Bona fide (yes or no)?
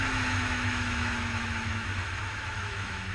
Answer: no